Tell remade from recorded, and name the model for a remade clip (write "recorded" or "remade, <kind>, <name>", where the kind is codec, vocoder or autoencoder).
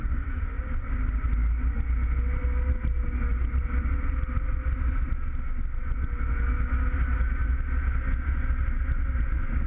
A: recorded